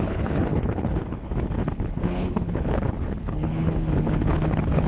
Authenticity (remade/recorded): remade